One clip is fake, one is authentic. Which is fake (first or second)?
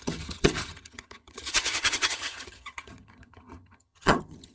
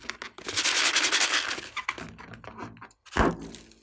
first